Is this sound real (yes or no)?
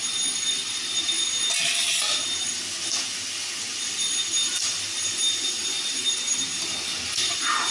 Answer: yes